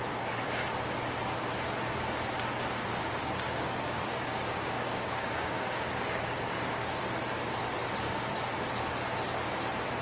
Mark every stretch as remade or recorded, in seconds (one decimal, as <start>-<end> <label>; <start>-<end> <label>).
0.0-2.8 recorded; 2.8-7.0 remade; 7.0-10.0 recorded